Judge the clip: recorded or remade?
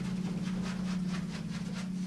recorded